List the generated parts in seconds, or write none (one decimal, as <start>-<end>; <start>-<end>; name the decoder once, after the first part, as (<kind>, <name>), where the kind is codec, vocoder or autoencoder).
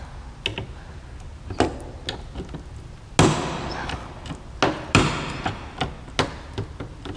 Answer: none